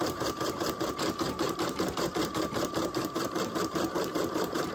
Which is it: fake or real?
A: fake